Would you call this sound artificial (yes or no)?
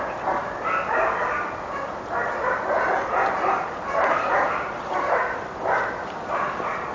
no